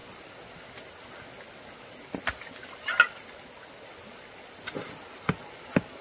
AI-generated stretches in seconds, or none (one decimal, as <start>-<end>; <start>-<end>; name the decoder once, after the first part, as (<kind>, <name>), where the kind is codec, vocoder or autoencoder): none